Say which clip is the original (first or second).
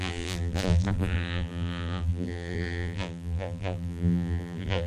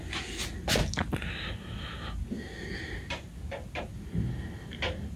second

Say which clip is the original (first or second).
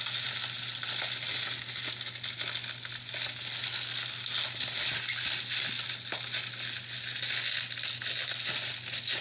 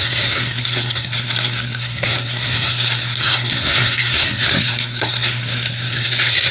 first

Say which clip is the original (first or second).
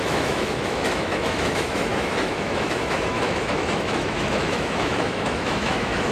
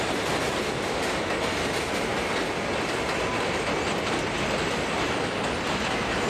second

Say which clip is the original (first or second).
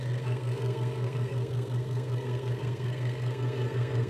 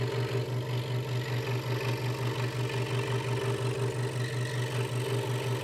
second